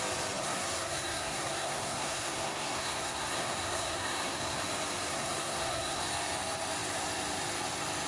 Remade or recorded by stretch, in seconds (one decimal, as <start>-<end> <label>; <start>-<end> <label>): 0.0-0.4 recorded; 0.4-4.6 remade; 4.6-5.1 recorded; 5.1-6.0 remade; 6.0-8.1 recorded